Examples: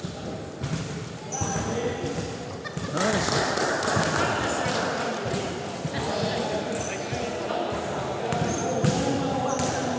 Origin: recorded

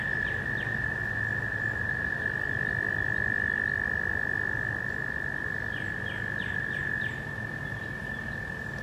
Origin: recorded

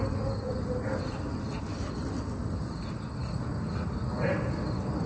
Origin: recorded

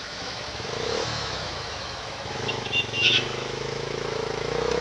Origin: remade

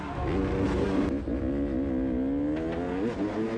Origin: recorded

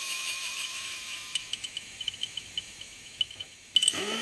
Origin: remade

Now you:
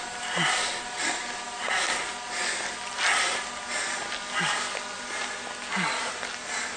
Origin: recorded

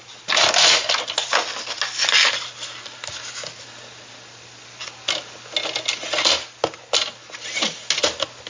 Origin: recorded